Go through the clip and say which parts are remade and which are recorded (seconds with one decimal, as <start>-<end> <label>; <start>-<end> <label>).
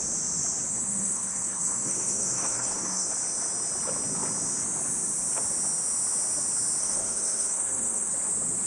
0.0-0.7 recorded; 0.7-3.1 remade; 3.1-6.8 recorded; 6.8-8.1 remade; 8.1-8.7 recorded